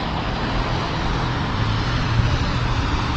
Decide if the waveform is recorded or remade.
recorded